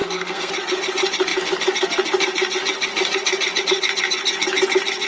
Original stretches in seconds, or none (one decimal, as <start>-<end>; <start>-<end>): 0.5-5.1